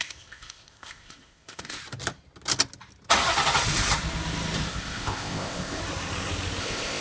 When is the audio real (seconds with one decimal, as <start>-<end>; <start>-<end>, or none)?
1.8-4.7; 5.8-6.6